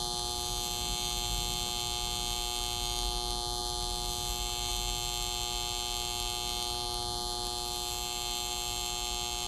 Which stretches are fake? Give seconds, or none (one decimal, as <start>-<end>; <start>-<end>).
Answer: none